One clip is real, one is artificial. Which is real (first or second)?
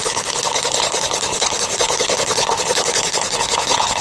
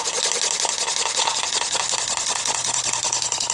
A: second